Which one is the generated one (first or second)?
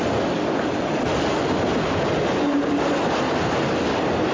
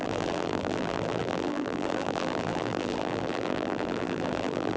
second